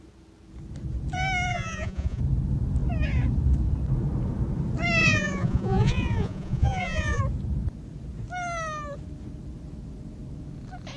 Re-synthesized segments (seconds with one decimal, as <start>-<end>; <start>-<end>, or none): 1.5-2.2; 5.0-7.2